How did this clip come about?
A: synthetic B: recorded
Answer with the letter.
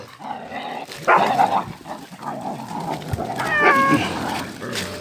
B